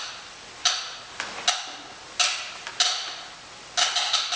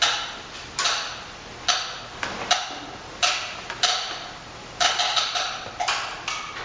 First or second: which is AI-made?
second